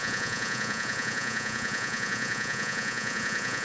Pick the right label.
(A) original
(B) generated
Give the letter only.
B